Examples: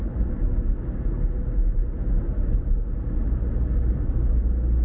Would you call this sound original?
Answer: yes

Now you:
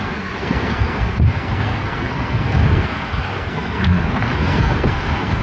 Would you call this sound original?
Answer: no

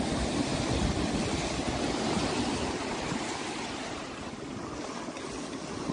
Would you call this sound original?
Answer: yes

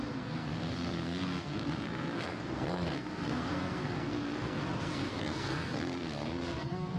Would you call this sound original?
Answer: no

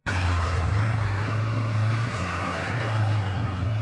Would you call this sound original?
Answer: no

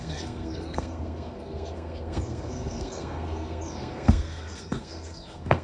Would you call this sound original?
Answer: no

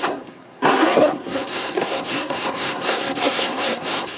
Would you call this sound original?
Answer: no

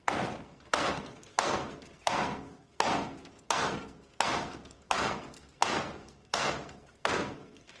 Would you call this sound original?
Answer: no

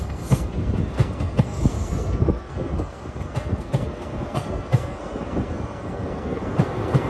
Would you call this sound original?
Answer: no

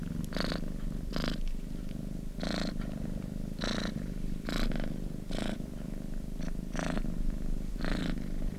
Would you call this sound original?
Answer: yes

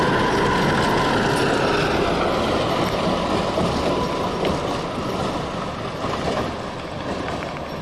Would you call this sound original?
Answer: yes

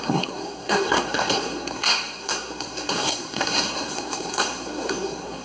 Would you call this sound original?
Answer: no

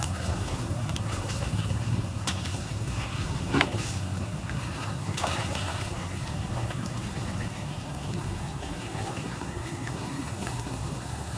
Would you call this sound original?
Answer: no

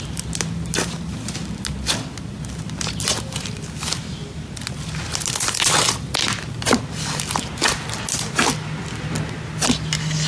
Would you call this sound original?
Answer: yes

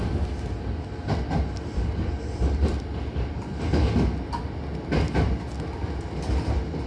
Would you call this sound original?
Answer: yes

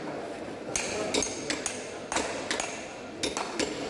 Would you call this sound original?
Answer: yes